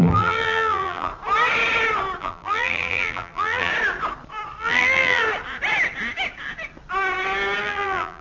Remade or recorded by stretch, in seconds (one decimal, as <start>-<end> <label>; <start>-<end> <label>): 0.0-1.1 remade; 1.1-2.2 recorded; 2.2-3.7 remade; 3.7-4.6 recorded; 4.6-5.2 remade; 5.2-7.6 recorded; 7.6-8.2 remade